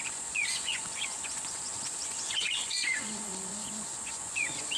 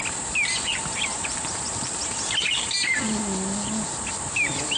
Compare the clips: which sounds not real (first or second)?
first